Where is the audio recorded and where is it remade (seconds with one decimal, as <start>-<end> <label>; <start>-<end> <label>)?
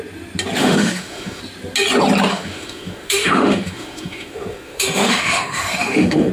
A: 0.0-0.6 recorded; 0.6-1.4 remade; 1.4-2.3 recorded; 2.3-6.3 remade